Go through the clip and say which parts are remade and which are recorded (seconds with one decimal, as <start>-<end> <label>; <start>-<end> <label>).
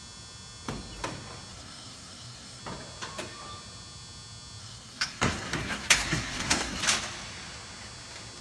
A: 0.0-1.5 recorded; 1.5-2.6 remade; 2.6-4.6 recorded; 4.6-6.8 remade; 6.8-8.4 recorded